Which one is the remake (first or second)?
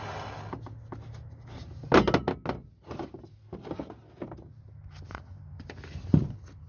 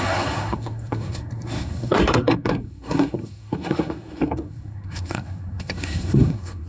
second